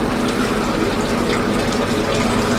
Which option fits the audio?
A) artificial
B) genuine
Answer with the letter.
B